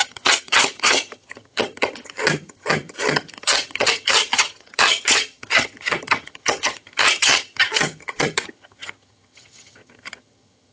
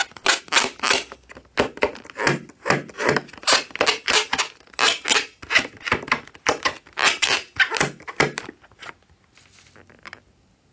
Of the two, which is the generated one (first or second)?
first